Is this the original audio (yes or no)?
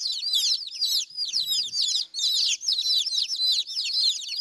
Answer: yes